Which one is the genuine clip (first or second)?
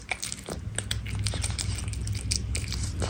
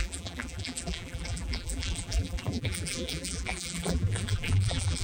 first